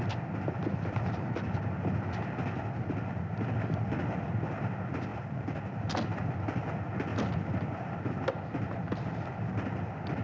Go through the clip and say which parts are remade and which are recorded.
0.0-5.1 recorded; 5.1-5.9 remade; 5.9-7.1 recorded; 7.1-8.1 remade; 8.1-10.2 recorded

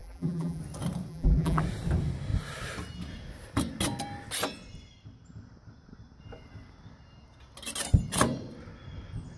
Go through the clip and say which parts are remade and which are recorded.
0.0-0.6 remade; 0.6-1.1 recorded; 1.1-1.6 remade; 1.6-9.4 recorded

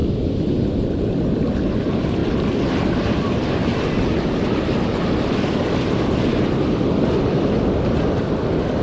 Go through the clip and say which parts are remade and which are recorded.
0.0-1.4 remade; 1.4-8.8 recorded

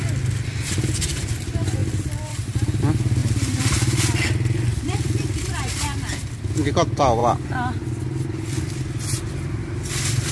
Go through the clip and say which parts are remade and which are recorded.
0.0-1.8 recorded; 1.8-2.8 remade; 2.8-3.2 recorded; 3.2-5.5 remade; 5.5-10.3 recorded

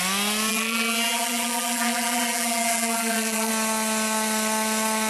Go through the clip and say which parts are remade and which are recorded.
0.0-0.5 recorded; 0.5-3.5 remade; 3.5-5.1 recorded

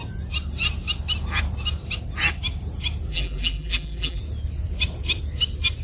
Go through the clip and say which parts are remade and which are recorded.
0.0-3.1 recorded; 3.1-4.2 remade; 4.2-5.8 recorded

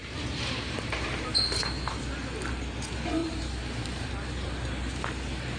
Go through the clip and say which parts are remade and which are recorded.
0.0-2.0 remade; 2.0-3.2 recorded; 3.2-4.1 remade; 4.1-5.6 recorded

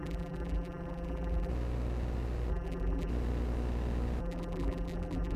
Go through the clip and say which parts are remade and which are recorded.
0.0-1.5 remade; 1.5-2.5 recorded; 2.5-3.1 remade; 3.1-4.2 recorded; 4.2-5.4 remade